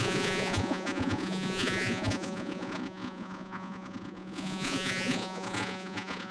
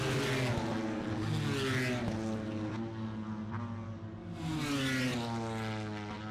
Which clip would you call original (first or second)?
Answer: second